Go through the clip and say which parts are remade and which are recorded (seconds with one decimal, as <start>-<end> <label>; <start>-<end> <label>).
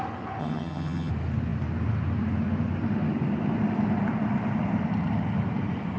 0.0-0.4 recorded; 0.4-1.1 remade; 1.1-6.0 recorded